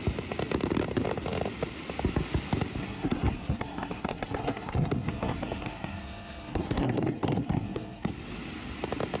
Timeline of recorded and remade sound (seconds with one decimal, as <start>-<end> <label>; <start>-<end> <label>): 0.0-2.8 recorded; 2.8-8.1 remade; 8.1-9.2 recorded